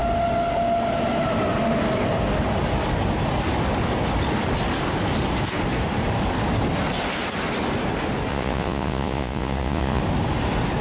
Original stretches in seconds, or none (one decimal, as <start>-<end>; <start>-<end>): 0.0-8.3; 10.0-10.8